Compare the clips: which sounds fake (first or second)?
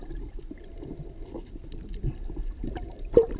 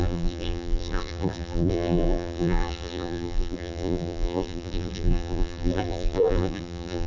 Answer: second